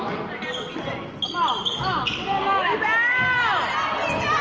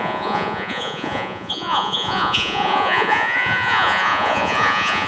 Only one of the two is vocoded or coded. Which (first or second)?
second